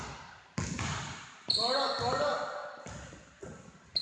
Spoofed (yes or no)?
no